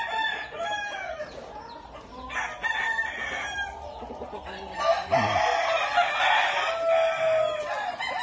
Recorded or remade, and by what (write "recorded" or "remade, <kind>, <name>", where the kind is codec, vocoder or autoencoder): recorded